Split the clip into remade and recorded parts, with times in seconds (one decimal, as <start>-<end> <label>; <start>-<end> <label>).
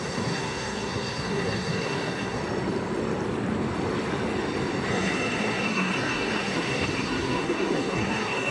0.0-2.4 remade; 2.4-4.9 recorded; 4.9-8.5 remade